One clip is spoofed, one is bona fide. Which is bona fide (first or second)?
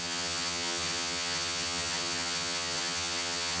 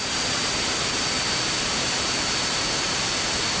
second